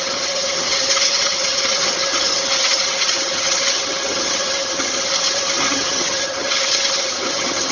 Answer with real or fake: fake